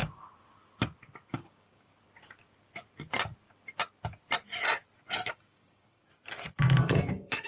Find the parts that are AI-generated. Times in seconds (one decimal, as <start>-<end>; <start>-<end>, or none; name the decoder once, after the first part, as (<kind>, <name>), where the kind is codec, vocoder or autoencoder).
1.3-1.9 (codec, DAC); 5.3-6.0; 6.8-7.5